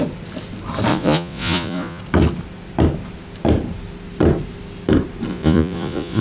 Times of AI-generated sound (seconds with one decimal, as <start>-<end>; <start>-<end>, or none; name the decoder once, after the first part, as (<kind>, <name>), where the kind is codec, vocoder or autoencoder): 0.9-2.0 (vocoder, Vocos); 5.3-6.2